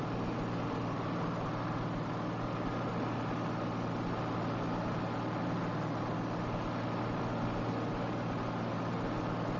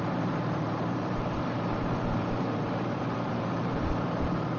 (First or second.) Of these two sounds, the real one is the first